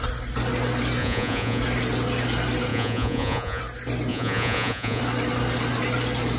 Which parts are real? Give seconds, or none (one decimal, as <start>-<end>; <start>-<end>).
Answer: 0.0-1.0; 1.6-2.7; 3.6-4.1; 5.0-6.4